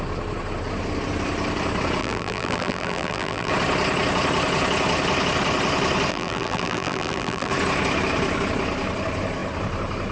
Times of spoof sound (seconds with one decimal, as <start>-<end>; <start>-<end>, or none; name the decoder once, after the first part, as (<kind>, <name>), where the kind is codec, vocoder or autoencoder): 2.0-3.5 (vocoder, BigVGAN v2); 6.1-7.5